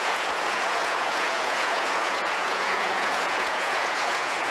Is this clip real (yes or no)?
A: no